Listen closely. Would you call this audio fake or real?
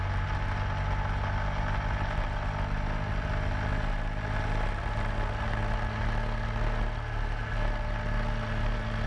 real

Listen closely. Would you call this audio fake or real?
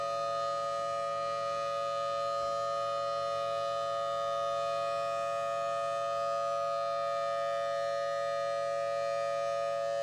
real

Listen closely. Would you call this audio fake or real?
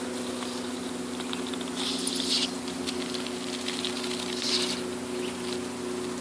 real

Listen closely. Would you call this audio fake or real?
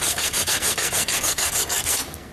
fake